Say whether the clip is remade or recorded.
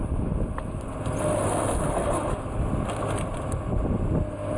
recorded